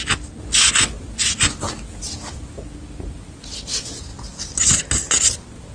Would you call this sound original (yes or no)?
yes